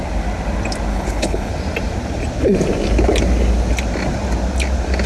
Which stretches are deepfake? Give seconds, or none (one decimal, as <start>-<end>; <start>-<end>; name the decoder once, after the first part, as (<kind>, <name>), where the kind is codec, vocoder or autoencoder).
0.9-1.5 (codec, HILCodec)

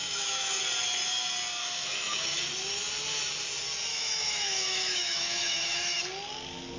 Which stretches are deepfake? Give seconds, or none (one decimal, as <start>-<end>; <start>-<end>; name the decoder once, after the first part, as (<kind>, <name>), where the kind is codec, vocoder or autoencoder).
0.0-0.6 (autoencoder, DAC-VAE); 1.6-2.4; 3.9-6.0

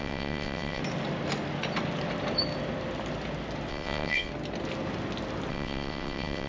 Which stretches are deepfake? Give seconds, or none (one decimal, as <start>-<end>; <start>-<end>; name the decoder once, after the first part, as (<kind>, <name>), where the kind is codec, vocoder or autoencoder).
0.0-0.8 (vocoder, WaveNeXt); 3.7-4.3; 5.5-6.5

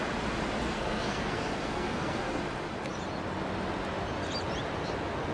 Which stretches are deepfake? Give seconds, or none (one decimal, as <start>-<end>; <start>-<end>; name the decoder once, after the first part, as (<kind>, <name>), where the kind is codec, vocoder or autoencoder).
0.7-2.4 (codec, SNAC)

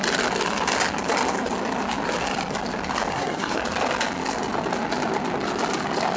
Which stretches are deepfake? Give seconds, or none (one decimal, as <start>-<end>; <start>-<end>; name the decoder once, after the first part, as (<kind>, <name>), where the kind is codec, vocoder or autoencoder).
3.1-3.6 (codec, SNAC)

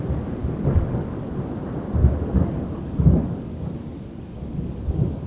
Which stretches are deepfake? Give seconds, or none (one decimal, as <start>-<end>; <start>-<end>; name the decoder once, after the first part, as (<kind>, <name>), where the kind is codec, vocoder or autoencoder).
0.4-1.3 (codec, DAC); 2.0-5.3

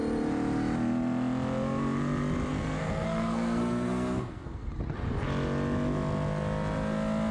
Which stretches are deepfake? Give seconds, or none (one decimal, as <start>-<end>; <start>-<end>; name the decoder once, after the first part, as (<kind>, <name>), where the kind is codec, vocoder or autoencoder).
2.5-4.7 (codec, SNAC)

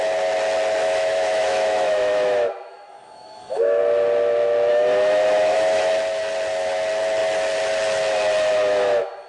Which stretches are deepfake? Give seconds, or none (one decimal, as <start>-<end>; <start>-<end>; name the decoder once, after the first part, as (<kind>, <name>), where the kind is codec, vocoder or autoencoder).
0.8-3.8 (autoencoder, DAC-VAE); 4.7-5.9